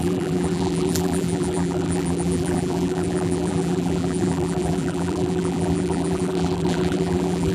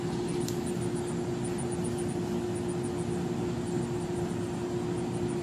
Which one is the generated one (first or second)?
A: first